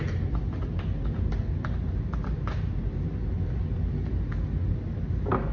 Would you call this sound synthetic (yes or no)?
no